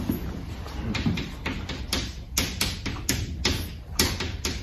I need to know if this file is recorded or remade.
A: recorded